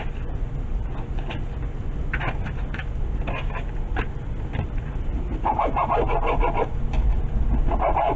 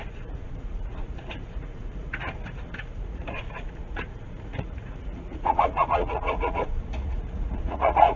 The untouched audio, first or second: first